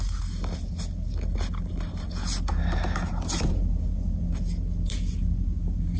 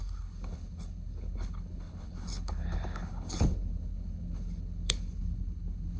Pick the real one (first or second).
first